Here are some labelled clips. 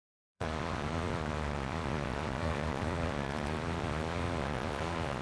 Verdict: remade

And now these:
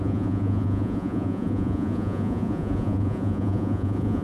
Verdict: remade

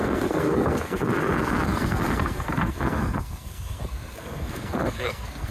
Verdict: remade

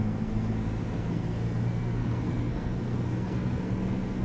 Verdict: remade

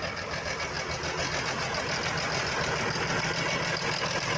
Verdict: recorded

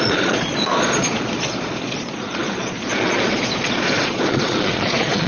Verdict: remade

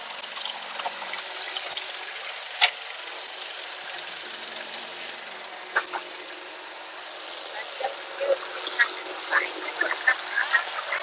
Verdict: recorded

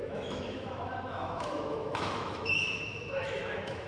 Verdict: remade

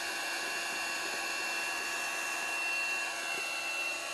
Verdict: recorded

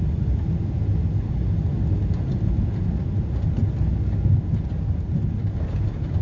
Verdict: recorded